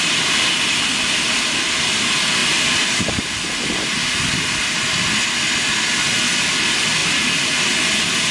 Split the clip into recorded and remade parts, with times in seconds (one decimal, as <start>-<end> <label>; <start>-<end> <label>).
0.0-8.3 recorded